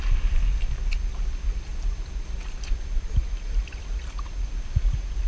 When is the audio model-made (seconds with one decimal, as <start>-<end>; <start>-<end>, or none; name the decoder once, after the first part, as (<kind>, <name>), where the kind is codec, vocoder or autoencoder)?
none